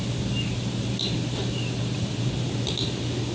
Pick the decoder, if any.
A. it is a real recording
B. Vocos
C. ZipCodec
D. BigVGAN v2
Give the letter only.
A